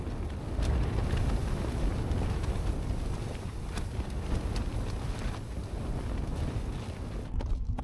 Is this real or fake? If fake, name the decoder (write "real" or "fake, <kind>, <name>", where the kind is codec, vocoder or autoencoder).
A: real